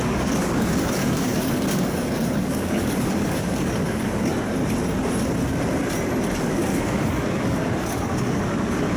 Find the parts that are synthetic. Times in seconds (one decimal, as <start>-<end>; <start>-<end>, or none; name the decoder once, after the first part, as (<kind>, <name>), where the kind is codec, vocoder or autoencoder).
0.0-4.3 (codec, DAC); 6.4-9.0